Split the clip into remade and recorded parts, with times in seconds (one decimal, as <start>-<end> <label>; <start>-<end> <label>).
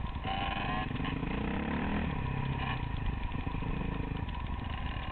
0.0-1.2 recorded; 1.2-3.8 remade; 3.8-5.1 recorded